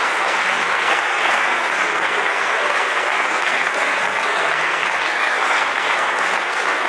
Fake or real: fake